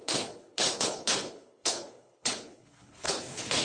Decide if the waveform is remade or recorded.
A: remade